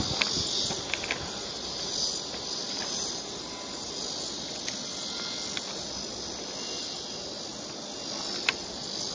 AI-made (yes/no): no